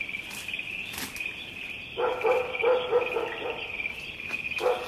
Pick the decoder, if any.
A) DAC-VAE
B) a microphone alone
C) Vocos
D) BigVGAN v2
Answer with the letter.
B